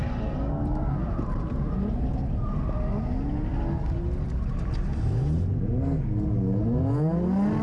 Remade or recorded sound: recorded